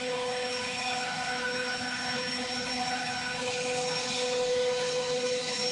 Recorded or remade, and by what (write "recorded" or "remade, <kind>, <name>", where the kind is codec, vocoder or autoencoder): remade, codec, HILCodec